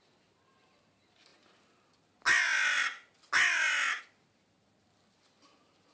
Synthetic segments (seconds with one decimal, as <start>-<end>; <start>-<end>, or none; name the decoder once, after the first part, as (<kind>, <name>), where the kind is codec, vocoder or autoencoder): none